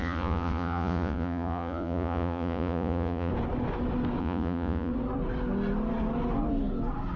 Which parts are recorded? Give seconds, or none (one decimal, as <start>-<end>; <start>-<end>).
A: 3.3-4.2; 4.9-7.2